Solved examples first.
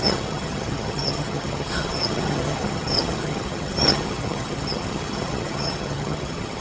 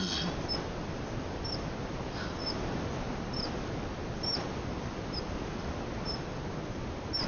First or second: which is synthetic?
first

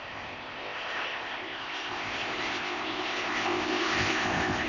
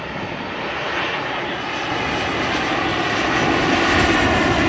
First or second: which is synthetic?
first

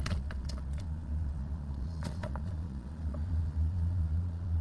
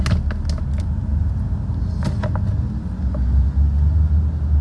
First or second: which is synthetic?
first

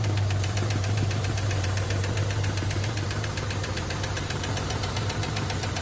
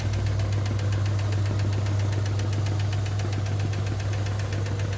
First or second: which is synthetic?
first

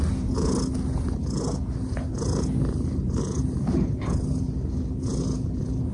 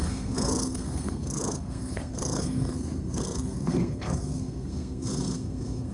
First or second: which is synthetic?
second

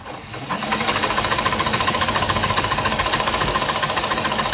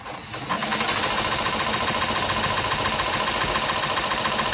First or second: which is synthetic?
first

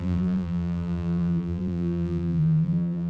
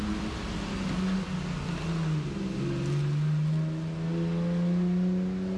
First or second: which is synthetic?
first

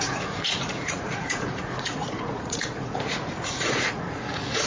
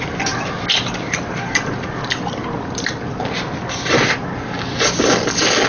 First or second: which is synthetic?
first